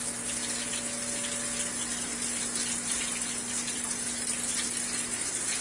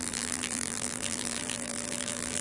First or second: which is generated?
second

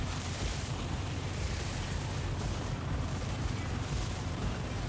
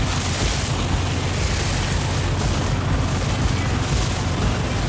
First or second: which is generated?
first